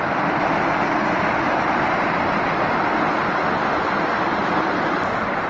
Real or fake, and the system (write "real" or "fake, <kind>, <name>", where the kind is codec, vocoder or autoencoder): real